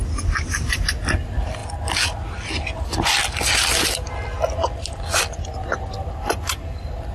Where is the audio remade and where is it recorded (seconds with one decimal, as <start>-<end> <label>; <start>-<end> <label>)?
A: 0.0-7.1 recorded